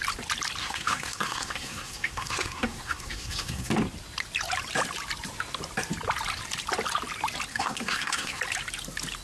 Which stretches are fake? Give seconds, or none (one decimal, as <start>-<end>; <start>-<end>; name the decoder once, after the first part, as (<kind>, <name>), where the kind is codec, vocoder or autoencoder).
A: 0.6-3.7 (codec, SNAC); 7.5-8.4